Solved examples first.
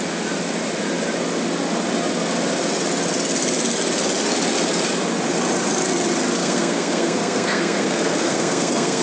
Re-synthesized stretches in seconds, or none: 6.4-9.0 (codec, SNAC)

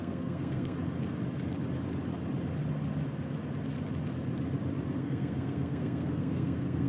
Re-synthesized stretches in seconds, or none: 0.0-0.8 (codec, SNAC); 4.9-6.9